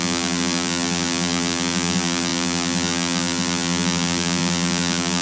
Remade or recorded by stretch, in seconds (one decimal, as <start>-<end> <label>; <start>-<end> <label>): 0.0-5.2 remade